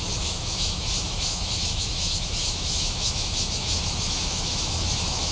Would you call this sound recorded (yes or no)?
no